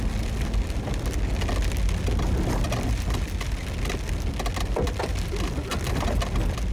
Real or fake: real